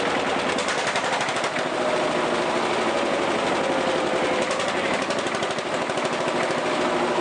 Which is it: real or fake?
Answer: real